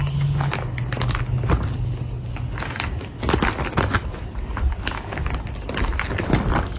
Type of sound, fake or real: real